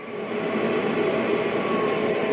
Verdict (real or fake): real